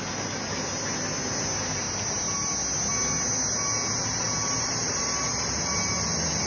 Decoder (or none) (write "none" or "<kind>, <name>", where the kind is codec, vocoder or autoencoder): none